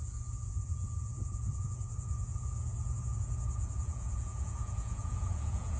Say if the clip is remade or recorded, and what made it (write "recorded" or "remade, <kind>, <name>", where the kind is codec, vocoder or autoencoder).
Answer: remade, vocoder, Vocos